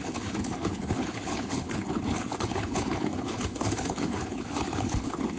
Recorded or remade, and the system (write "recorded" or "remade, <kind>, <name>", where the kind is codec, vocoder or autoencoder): remade, codec, HILCodec